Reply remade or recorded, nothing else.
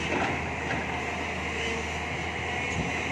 recorded